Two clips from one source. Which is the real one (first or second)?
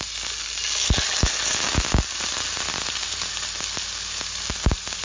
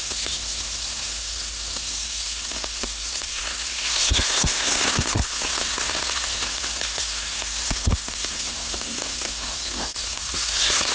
first